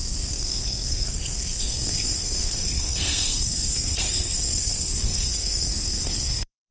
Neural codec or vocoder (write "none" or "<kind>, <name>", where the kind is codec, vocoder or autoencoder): codec, SNAC